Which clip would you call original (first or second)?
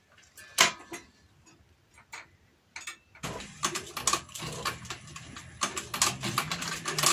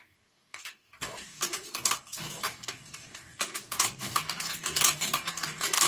first